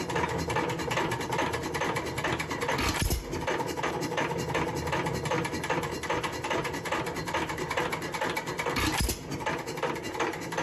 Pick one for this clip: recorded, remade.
recorded